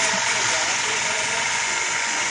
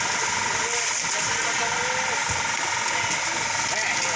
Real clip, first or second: second